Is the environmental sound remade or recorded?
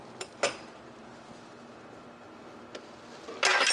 recorded